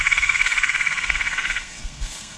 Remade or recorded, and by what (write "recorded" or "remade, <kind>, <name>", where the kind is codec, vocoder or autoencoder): remade, codec, SNAC